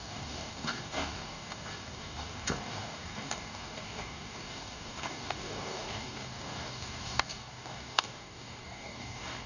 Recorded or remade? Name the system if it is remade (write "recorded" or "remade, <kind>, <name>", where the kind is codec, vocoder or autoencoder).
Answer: remade, codec, DAC